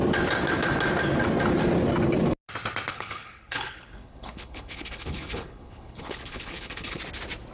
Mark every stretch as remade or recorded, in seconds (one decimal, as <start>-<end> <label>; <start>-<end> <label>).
0.0-2.9 recorded; 2.9-7.0 remade; 7.0-7.5 recorded